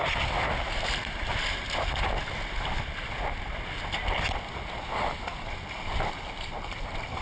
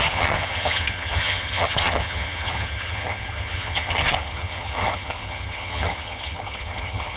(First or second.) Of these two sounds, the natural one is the first